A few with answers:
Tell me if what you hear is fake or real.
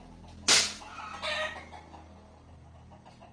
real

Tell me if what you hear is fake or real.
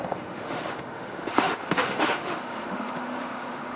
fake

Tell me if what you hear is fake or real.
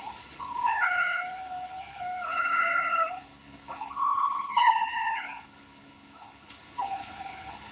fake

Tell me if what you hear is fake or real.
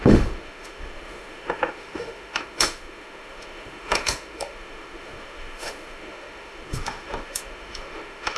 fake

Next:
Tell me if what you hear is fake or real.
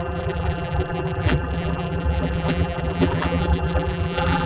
fake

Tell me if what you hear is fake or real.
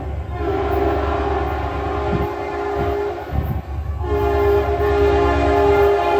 real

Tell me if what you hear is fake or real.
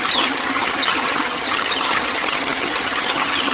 fake